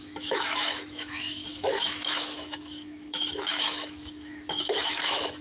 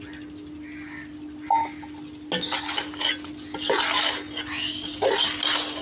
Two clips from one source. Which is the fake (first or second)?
first